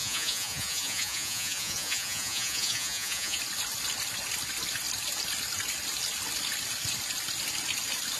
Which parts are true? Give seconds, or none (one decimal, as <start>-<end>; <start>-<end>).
3.4-8.2